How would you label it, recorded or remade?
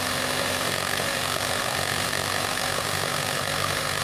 remade